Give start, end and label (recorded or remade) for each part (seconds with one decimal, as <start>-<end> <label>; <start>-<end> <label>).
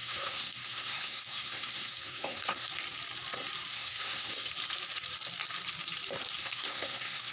0.0-2.7 remade; 2.7-3.7 recorded; 3.7-4.5 remade; 4.5-6.4 recorded; 6.4-7.3 remade